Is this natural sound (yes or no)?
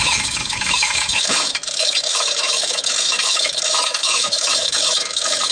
no